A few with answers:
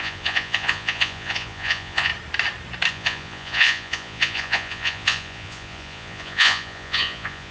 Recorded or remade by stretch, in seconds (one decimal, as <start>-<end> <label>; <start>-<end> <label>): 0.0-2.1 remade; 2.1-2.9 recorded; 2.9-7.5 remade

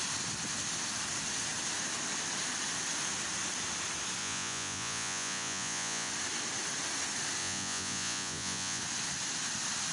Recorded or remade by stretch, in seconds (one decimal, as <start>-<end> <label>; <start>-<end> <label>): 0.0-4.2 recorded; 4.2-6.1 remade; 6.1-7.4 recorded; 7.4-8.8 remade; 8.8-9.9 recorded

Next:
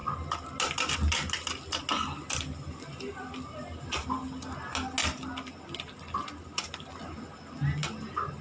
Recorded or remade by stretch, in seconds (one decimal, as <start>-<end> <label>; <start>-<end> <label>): 0.0-8.4 recorded

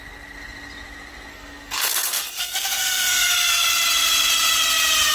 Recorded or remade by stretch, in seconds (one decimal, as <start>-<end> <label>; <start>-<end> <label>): 0.0-1.3 recorded; 1.3-3.7 remade; 3.7-5.1 recorded

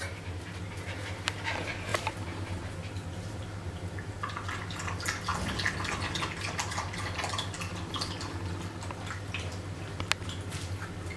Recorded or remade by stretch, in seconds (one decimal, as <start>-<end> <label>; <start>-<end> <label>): 0.0-1.9 recorded; 1.9-4.1 remade; 4.1-11.2 recorded

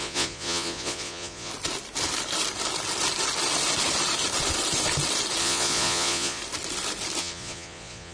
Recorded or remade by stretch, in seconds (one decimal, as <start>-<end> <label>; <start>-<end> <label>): 0.0-1.5 remade; 1.5-5.4 recorded; 5.4-6.4 remade; 6.4-7.2 recorded; 7.2-8.1 remade